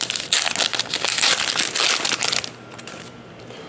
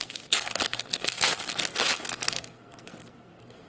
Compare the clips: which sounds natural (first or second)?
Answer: first